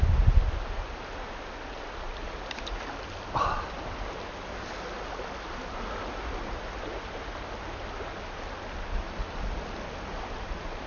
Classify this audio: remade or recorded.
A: recorded